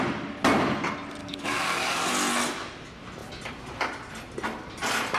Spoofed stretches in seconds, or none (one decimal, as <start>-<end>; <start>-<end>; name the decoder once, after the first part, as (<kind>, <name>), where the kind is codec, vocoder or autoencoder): 1.2-2.1 (codec, DAC)